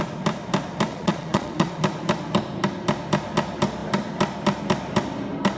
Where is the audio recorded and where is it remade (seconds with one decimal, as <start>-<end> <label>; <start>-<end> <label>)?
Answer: 0.0-0.9 recorded; 0.9-1.8 remade; 1.8-5.6 recorded